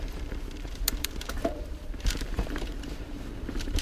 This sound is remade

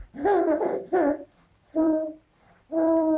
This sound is remade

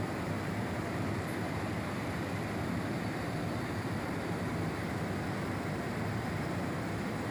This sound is remade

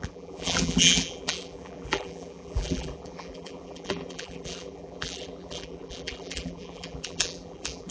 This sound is remade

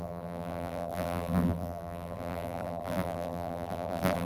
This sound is remade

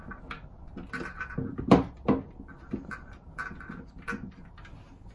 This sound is recorded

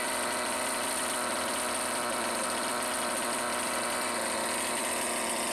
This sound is recorded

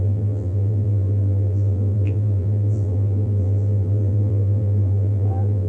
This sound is remade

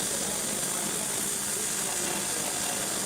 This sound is recorded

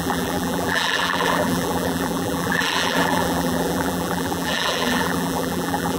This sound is remade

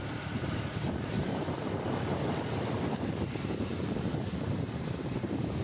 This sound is remade